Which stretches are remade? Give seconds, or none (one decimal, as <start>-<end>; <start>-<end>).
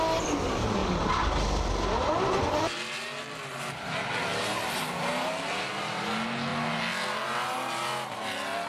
none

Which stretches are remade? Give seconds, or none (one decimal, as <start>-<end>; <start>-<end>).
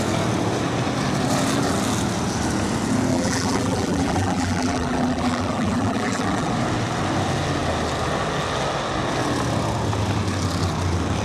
3.1-6.5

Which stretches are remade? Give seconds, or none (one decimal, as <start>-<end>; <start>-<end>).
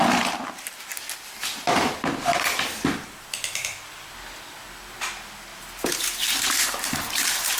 5.5-7.6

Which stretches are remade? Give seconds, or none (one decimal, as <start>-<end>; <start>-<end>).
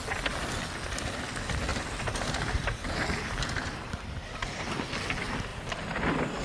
1.7-4.9